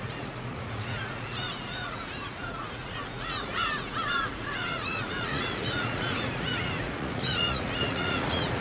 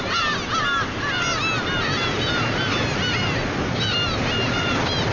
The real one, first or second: second